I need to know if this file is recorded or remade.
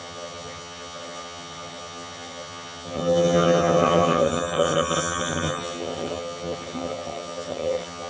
remade